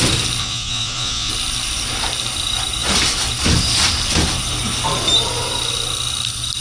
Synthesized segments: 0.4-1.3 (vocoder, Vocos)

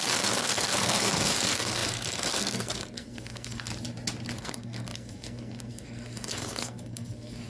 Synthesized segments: 0.0-3.7 (codec, SNAC); 4.4-7.5

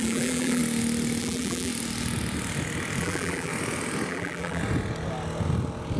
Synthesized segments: 0.0-0.6 (vocoder, BigVGAN v2); 1.2-1.7; 3.0-3.5; 4.1-4.6

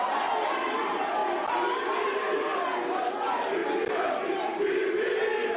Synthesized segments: none

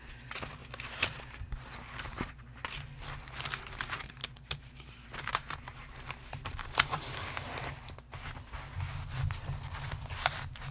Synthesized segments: 0.6-1.2 (vocoder, BigVGAN v2); 4.2-7.7